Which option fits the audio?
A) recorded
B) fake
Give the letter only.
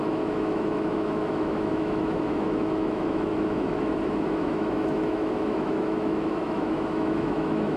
B